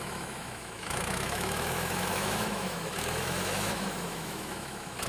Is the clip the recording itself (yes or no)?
no